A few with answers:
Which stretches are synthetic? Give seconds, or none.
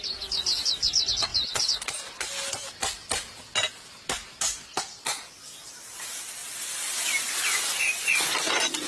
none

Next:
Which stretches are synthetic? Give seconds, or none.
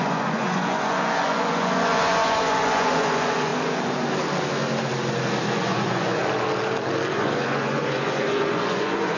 0.0-3.5 (vocoder, Vocos); 5.5-6.2; 7.1-9.2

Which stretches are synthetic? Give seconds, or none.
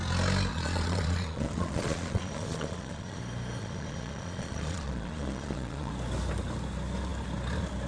0.5-3.2 (vocoder, Vocos); 3.6-5.9